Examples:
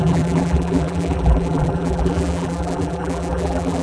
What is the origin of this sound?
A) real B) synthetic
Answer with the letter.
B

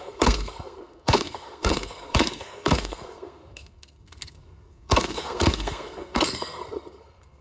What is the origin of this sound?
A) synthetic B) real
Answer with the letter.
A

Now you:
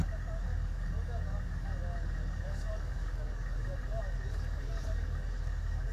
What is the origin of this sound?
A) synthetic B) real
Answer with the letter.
A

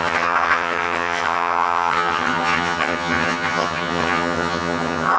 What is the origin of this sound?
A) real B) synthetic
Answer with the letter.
B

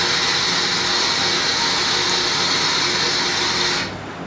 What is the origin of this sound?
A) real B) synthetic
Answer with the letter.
A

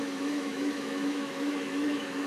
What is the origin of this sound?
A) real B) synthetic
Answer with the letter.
B